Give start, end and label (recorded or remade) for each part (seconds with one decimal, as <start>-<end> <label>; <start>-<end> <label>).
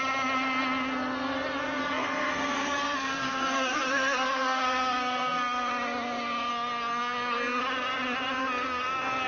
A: 0.0-1.8 recorded; 1.8-5.7 remade; 5.7-6.5 recorded; 6.5-7.6 remade; 7.6-8.4 recorded; 8.4-9.3 remade